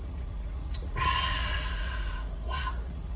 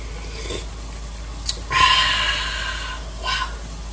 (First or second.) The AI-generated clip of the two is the first